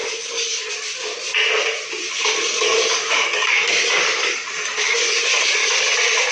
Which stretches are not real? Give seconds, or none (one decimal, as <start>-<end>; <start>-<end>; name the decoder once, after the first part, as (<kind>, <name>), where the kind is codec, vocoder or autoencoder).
0.0-0.7 (codec, DAC); 2.0-5.8